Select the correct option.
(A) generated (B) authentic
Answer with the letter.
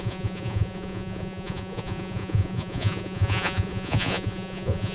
A